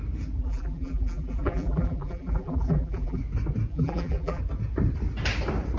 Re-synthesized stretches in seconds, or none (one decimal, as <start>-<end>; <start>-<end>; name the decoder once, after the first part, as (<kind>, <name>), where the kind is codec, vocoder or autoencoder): 0.4-3.2 (vocoder, BigVGAN v2); 3.7-4.4